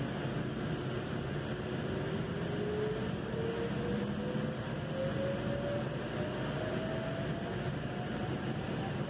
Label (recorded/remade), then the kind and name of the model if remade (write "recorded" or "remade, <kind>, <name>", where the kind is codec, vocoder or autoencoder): recorded